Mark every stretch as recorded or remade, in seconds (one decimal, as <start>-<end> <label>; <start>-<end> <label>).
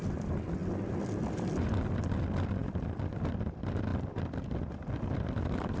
0.0-5.8 recorded